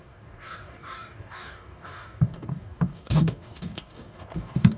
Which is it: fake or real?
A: fake